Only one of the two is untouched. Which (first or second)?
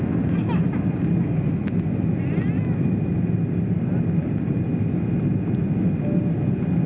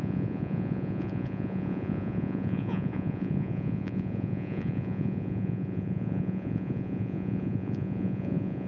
first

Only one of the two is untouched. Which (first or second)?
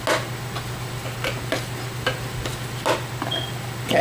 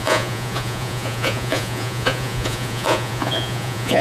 first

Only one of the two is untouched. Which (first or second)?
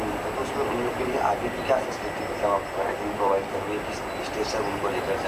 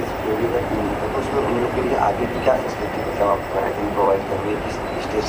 first